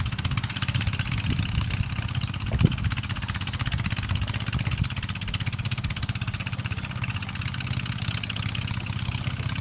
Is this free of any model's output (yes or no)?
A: yes